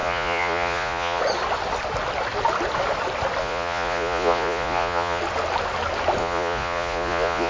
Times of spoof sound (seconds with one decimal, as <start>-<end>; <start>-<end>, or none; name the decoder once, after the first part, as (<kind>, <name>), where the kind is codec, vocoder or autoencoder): 0.0-1.2 (vocoder, Vocos); 3.4-5.2; 6.2-7.5